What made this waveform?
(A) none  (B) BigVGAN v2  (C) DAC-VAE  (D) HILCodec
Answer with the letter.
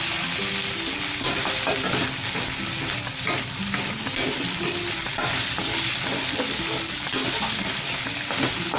B